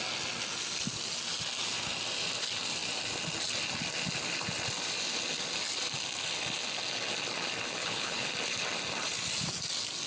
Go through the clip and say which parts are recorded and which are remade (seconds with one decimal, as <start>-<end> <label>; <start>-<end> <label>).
0.0-7.8 recorded; 7.8-8.3 remade; 8.3-10.1 recorded